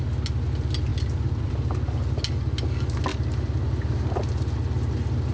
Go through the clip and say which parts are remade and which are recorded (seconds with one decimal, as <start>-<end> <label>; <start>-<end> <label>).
0.0-0.9 recorded; 0.9-1.5 remade; 1.5-5.3 recorded